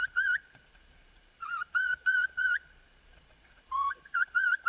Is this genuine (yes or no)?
no